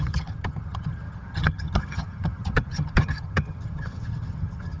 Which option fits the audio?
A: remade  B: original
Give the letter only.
A